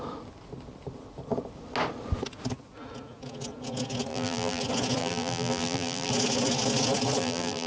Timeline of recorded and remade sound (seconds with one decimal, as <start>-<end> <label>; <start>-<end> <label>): 0.0-4.1 recorded; 4.1-4.6 remade; 4.6-5.0 recorded; 5.0-6.1 remade; 6.1-7.2 recorded; 7.2-7.7 remade